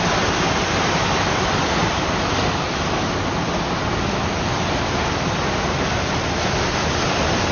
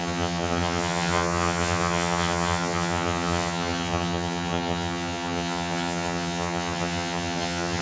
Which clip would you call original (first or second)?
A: first